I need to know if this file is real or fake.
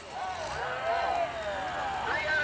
real